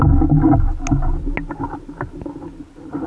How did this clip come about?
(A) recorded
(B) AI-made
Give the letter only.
A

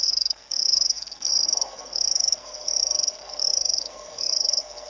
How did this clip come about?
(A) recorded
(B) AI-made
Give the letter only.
B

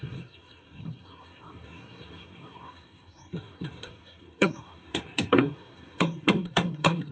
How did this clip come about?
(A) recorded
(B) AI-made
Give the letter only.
B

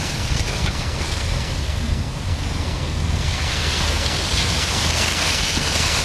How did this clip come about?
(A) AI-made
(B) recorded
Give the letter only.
A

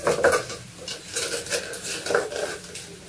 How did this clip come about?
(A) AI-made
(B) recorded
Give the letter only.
B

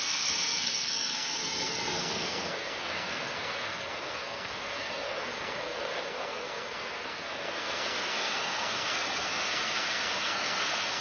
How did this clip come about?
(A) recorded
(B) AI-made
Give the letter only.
B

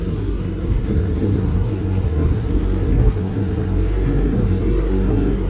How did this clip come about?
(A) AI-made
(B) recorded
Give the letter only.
A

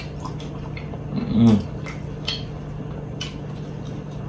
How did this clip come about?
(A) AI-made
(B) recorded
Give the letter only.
B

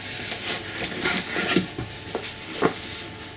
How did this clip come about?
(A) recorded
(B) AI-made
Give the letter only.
A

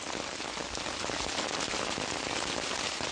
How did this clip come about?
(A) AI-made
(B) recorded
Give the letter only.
B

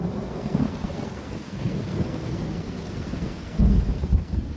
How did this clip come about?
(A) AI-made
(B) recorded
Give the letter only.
A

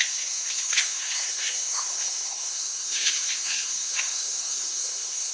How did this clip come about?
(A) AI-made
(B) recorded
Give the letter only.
A